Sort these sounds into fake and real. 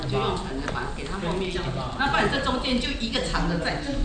real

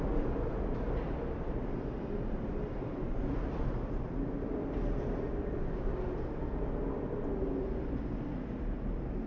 real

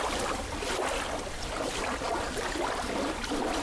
real